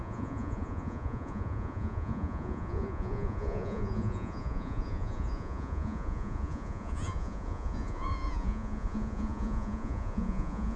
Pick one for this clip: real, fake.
fake